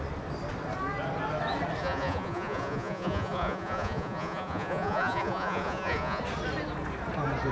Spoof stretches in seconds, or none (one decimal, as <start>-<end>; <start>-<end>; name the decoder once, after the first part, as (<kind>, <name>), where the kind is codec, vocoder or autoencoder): 1.8-6.2 (vocoder, Vocos)